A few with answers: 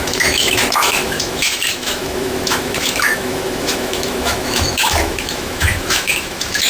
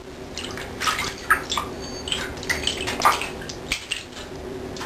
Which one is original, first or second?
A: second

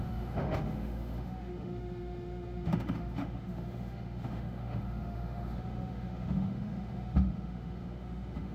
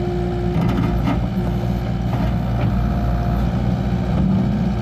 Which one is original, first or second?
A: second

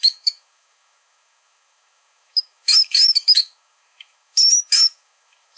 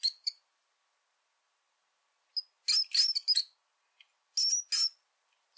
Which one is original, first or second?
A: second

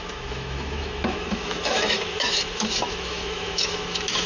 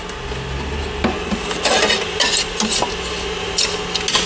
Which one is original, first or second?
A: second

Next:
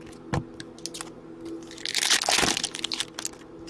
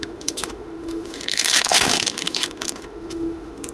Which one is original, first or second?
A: first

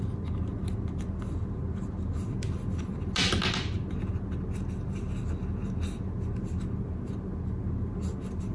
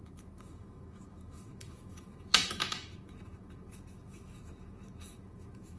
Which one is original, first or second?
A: first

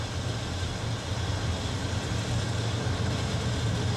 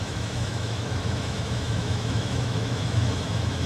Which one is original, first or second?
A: first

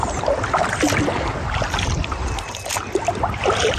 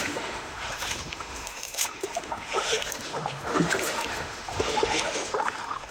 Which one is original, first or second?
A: first